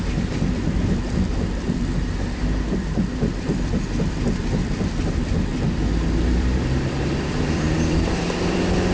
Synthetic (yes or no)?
yes